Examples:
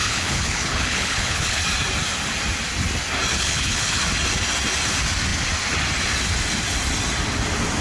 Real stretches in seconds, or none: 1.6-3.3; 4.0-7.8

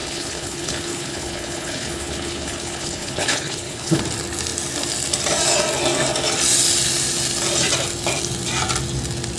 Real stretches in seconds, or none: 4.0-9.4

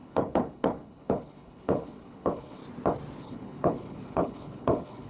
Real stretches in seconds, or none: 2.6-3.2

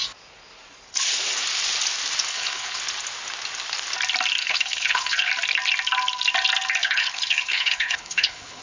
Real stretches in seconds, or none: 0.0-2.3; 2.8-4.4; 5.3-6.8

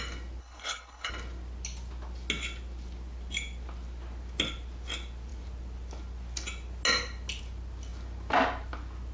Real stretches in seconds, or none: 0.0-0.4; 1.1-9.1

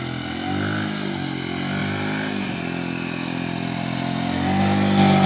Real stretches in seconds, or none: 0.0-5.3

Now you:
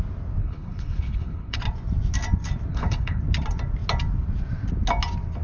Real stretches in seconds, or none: 0.0-0.4; 1.6-2.7; 3.2-5.4